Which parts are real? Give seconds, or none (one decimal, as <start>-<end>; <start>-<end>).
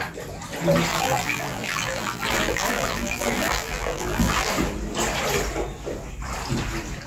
0.0-0.9; 4.5-7.1